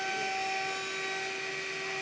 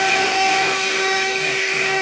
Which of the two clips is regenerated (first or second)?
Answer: second